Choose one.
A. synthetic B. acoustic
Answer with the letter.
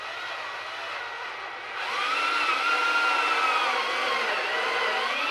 B